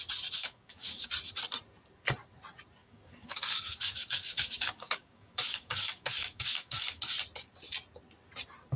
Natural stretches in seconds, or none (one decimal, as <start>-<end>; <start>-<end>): 0.0-0.4; 1.1-2.8; 7.0-8.8